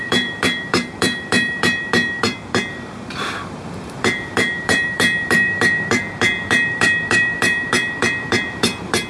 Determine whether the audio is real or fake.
fake